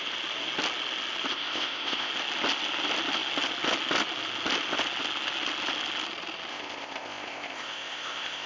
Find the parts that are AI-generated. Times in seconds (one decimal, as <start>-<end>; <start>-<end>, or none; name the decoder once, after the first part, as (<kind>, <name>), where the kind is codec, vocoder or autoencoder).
1.3-2.1 (codec, ZipCodec); 6.5-8.5

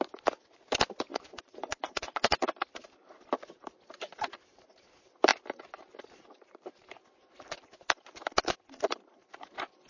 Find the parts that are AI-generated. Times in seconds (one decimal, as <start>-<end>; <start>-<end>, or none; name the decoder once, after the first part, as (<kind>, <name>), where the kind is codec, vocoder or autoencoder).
1.1-2.4 (vocoder, Vocos)

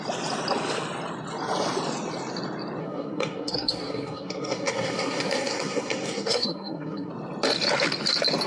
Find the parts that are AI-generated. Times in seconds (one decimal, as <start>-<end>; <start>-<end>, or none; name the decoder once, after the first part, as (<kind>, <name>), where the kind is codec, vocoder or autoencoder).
2.8-7.1 (codec, SNAC)

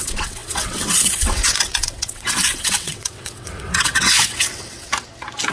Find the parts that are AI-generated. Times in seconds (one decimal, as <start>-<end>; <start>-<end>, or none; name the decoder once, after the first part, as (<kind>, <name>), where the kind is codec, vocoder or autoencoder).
0.0-4.9 (vocoder, WaveNeXt)

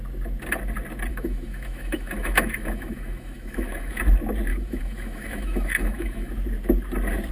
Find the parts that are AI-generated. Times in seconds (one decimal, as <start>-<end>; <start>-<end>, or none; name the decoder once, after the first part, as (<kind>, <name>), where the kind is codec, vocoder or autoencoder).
1.1-4.0 (autoencoder, DAC-VAE); 4.5-6.3

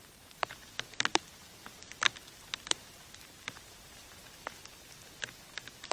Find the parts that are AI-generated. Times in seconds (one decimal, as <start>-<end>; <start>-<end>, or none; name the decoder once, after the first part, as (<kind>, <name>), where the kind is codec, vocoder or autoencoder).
0.0-0.4 (vocoder, BigVGAN v2); 2.4-4.2

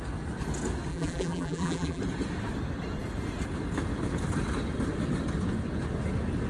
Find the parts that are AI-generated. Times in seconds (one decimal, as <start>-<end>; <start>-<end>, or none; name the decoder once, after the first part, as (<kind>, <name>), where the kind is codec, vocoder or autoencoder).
0.9-2.0 (vocoder, BigVGAN v2)

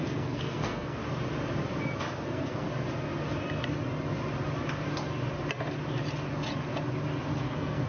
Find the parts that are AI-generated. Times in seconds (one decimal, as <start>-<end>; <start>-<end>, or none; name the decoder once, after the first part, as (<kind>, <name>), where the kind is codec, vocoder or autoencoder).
0.0-1.0 (codec, SNAC); 2.0-2.7; 7.4-7.9